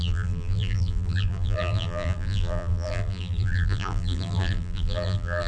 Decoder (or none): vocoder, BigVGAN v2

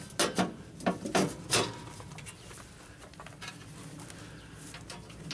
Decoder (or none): none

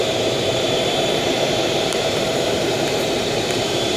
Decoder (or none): vocoder, BigVGAN v2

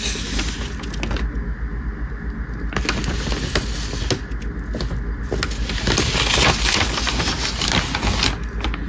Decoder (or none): none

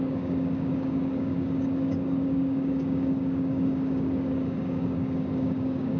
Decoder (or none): codec, DAC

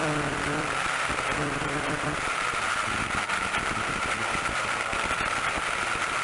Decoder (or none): vocoder, BigVGAN v2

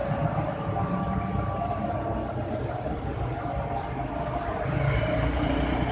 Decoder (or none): vocoder, BigVGAN v2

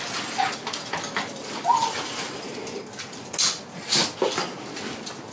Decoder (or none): none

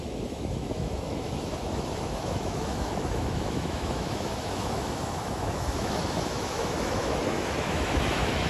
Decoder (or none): autoencoder, DAC-VAE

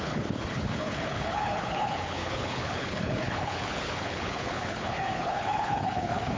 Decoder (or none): codec, HILCodec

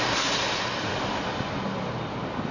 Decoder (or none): none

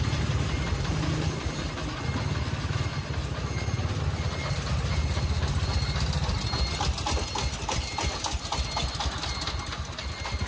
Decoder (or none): none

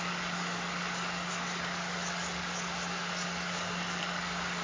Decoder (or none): codec, DAC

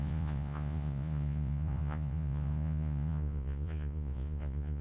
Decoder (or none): vocoder, Vocos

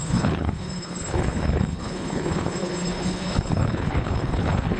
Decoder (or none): codec, HILCodec